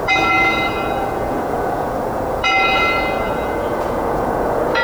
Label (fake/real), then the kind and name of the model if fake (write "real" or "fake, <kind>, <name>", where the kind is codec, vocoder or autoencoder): fake, vocoder, Vocos